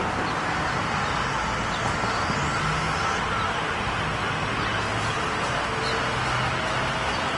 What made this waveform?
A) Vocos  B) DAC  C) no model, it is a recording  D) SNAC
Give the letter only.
C